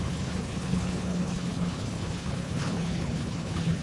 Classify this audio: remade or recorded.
remade